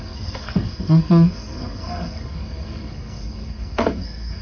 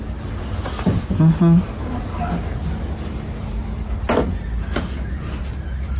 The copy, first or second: first